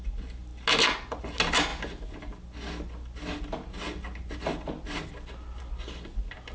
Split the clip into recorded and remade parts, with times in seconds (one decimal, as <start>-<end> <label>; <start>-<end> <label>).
0.0-6.5 recorded